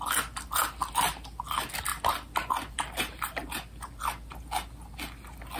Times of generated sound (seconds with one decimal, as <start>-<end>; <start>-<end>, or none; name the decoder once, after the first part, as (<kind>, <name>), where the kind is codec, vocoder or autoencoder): none